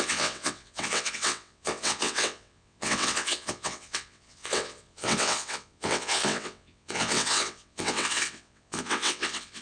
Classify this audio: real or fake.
fake